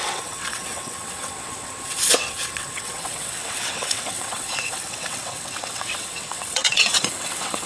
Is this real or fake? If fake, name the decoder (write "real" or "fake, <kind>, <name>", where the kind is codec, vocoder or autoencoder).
fake, vocoder, WaveNeXt